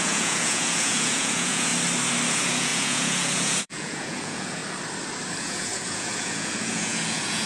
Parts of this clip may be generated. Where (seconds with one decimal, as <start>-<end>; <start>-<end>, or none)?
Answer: 0.0-1.7; 2.3-4.6; 5.4-7.5